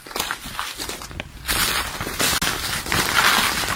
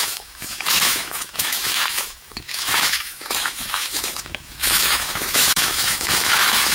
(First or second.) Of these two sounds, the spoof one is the second